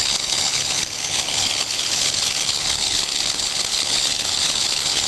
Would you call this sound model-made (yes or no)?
yes